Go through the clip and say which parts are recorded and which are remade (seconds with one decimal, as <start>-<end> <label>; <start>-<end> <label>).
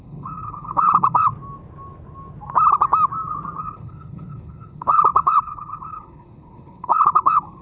0.0-1.3 remade; 1.3-3.6 recorded; 3.6-7.6 remade